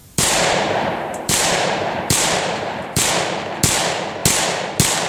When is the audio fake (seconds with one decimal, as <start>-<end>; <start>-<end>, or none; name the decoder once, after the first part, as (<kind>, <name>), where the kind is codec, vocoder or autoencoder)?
0.0-3.1 (vocoder, BigVGAN v2)